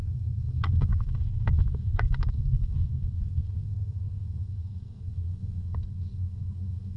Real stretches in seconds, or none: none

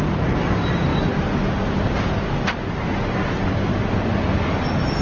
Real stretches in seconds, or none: 0.0-5.0

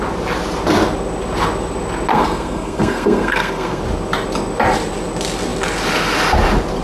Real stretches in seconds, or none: 0.0-2.1; 3.8-6.8

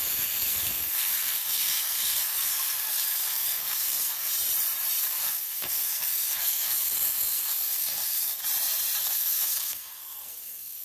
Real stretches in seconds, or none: 4.3-5.0; 8.4-9.0

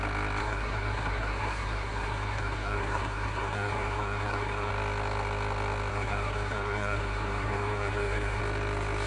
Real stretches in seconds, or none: 0.0-0.4; 4.7-5.9; 8.4-9.1

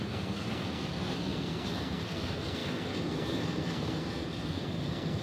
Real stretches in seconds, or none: none

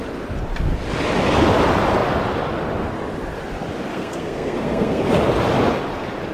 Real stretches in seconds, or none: 0.0-3.9; 5.0-6.3